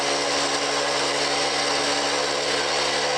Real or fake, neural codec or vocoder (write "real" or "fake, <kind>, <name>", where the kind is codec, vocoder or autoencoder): real